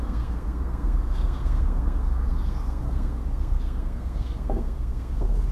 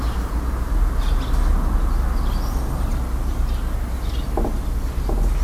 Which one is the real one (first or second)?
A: second